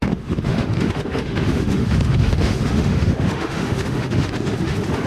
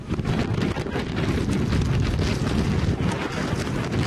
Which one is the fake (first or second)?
first